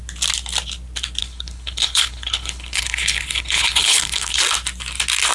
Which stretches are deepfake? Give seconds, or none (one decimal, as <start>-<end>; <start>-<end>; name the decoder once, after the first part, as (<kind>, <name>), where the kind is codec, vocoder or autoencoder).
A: 1.2-4.4 (codec, HILCodec)